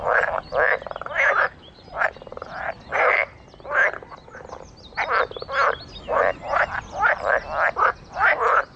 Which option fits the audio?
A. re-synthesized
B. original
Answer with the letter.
B